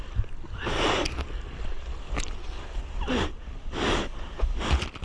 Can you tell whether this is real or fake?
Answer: real